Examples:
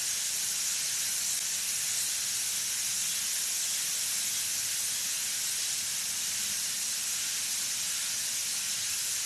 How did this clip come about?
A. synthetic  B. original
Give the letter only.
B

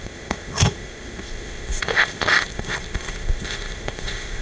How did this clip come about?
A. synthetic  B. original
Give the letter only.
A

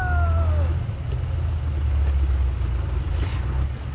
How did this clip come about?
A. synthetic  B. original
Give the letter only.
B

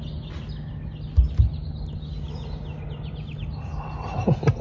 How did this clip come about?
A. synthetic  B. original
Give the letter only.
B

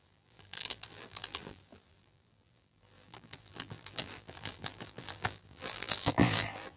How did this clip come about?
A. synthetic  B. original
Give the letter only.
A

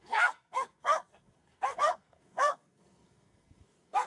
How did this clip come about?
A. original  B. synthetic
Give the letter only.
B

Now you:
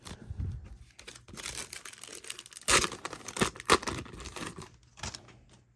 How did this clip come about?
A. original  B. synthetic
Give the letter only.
A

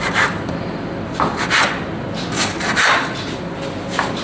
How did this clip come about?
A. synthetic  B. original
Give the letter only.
B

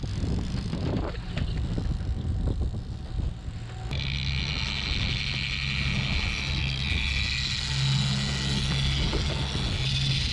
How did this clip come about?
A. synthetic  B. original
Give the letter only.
B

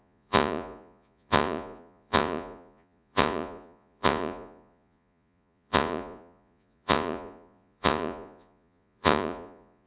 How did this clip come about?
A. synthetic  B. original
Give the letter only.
A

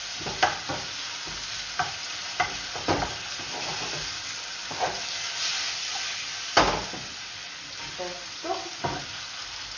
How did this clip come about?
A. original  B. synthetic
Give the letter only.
A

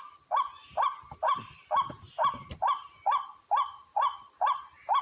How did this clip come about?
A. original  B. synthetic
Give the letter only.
A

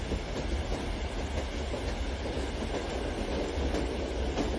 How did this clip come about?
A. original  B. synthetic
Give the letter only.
A